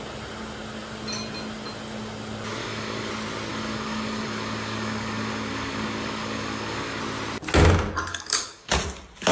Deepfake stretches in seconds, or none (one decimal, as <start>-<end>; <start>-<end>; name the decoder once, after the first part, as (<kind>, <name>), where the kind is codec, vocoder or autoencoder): 2.6-3.1 (codec, DAC); 3.5-7.0; 8.1-8.7